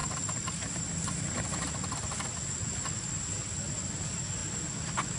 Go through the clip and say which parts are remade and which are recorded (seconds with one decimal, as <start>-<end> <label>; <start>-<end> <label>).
0.0-5.2 recorded